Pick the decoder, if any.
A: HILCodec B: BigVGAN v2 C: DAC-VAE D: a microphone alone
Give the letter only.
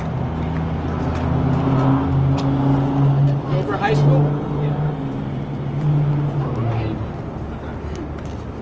D